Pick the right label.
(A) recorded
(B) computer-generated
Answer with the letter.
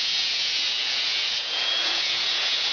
B